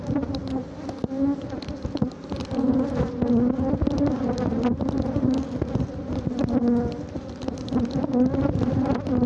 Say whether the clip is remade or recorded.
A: recorded